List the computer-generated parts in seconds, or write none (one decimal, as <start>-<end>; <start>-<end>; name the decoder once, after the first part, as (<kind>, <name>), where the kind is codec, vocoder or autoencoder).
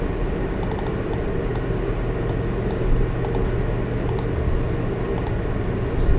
none